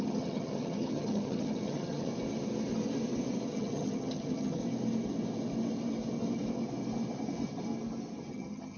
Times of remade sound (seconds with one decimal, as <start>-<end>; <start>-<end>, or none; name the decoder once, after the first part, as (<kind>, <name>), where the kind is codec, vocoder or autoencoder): 0.0-2.1 (vocoder, HiFi-GAN); 3.5-4.6; 8.3-8.8